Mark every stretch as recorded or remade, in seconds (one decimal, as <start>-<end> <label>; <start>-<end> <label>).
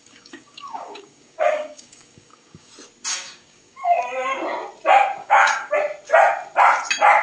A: 0.0-2.7 remade; 2.7-3.1 recorded; 3.1-4.0 remade; 4.0-5.2 recorded; 5.2-5.7 remade; 5.7-7.2 recorded